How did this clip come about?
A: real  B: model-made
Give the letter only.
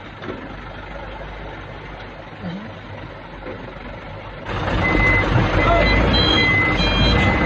A